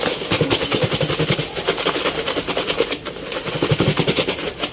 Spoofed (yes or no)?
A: no